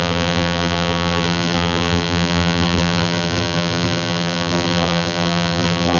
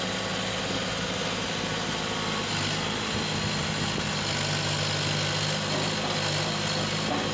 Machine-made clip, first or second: first